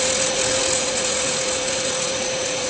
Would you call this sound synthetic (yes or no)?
yes